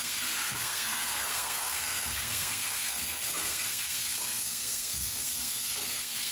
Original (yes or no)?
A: no